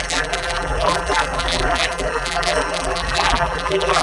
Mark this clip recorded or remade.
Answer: remade